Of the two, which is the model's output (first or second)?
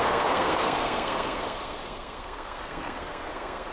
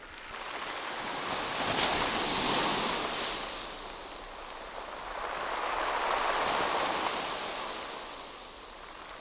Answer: first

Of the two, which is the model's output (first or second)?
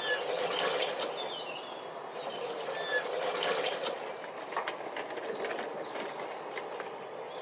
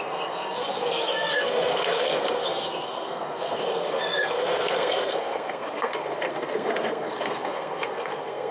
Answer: second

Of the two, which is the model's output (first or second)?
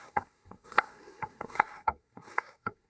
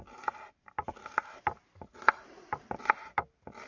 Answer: first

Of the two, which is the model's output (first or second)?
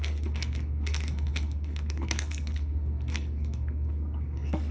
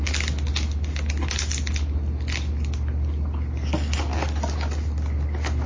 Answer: first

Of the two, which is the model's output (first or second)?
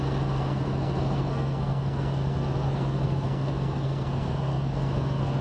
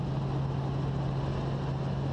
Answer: first